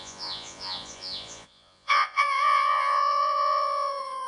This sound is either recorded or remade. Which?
remade